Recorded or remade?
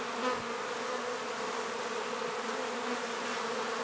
recorded